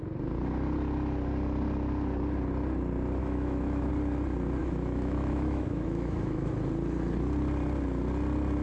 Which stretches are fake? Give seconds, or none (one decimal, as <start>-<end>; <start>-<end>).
3.2-3.9; 4.6-6.5